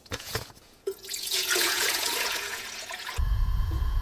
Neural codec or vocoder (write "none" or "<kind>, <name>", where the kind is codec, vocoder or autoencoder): vocoder, Vocos